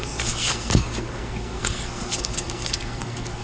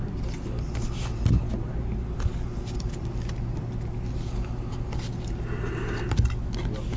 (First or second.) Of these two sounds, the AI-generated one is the first